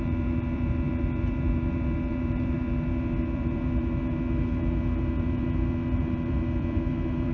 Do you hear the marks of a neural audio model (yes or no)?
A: yes